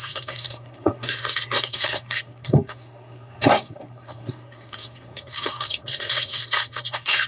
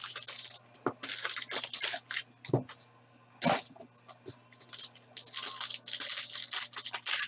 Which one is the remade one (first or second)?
first